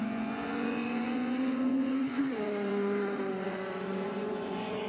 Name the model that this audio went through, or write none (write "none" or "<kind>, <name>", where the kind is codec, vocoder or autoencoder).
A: vocoder, Vocos